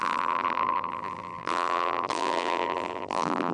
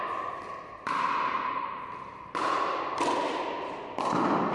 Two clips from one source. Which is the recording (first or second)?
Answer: second